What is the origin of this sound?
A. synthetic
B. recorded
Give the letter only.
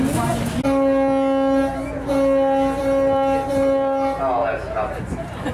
B